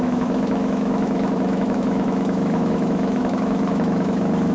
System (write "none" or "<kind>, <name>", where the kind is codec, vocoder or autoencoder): autoencoder, DAC-VAE